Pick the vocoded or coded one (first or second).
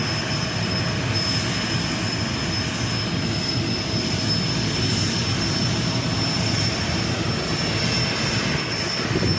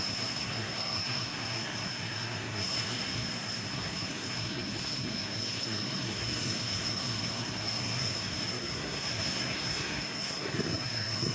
second